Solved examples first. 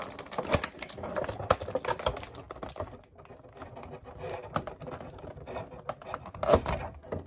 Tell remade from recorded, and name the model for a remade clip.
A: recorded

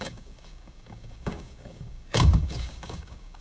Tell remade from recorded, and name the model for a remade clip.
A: remade, codec, DAC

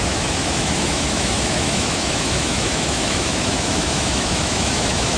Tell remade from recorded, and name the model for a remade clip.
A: remade, autoencoder, DAC-VAE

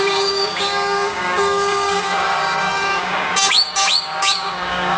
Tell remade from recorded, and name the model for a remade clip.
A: remade, codec, DAC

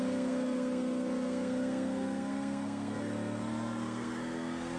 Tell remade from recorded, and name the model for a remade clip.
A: remade, codec, SNAC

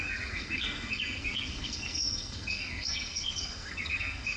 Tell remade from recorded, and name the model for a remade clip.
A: remade, codec, SNAC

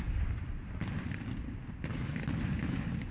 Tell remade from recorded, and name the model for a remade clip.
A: recorded